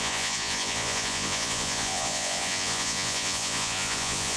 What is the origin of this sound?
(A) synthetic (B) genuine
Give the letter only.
A